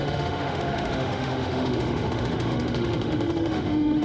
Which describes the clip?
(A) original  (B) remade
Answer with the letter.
B